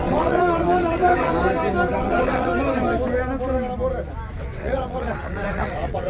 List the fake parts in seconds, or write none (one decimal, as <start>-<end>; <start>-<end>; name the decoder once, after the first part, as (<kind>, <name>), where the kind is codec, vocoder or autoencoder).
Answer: 0.0-1.3 (vocoder, WaveNeXt); 2.0-2.5; 4.3-6.1